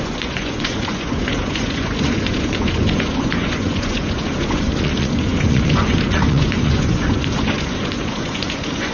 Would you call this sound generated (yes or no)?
yes